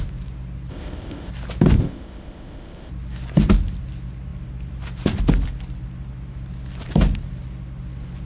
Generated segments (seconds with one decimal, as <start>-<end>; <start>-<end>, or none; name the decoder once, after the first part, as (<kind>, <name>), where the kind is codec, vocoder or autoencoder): 0.7-1.3 (codec, ZipCodec); 1.8-2.9